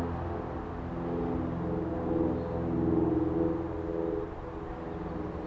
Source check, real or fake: real